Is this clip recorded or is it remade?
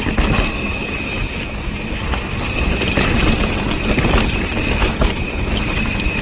recorded